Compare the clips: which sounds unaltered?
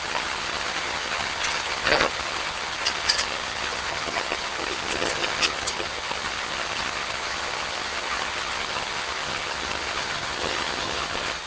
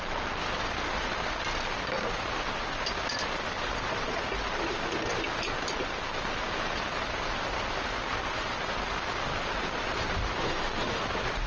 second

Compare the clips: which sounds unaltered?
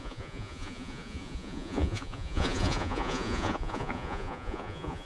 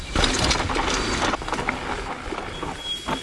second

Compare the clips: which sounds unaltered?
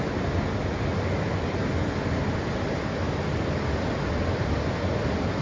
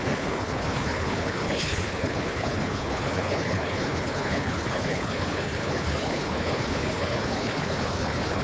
first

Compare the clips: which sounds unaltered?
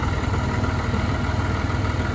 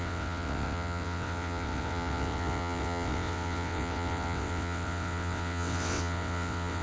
first